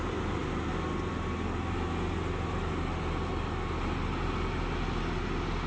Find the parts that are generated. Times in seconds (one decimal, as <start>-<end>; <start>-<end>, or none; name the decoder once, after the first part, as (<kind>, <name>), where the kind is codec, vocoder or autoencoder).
none